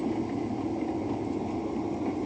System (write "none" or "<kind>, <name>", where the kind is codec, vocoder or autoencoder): none